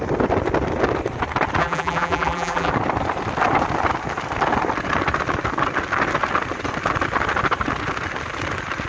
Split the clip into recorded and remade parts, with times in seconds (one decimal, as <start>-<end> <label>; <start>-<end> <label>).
0.0-1.6 recorded; 1.6-2.7 remade; 2.7-8.9 recorded